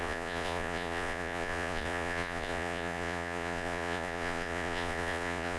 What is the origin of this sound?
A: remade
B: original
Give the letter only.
A